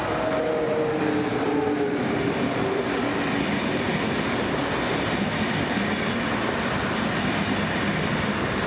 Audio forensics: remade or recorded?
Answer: recorded